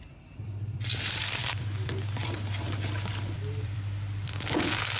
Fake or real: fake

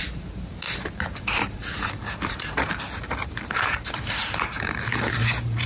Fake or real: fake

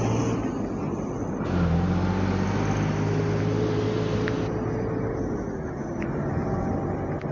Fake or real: real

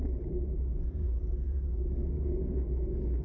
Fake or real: real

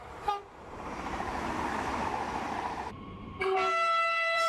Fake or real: fake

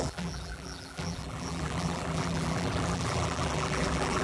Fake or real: fake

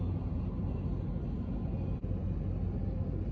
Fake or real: real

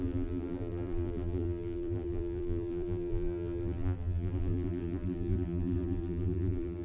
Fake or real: fake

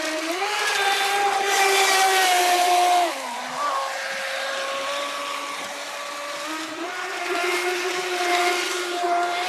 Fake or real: real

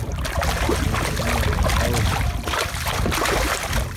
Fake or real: real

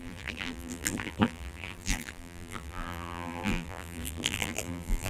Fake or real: fake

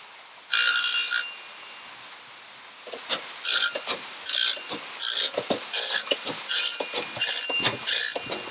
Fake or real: real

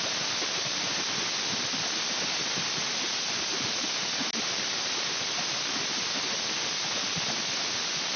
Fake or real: real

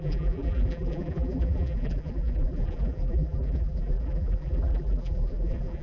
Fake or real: fake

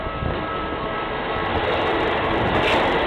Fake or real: real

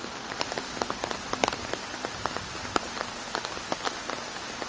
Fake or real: real